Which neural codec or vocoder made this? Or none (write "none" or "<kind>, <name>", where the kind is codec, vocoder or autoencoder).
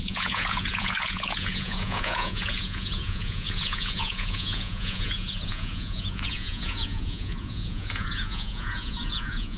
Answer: vocoder, Vocos